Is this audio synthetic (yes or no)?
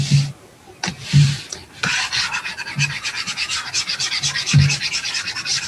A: yes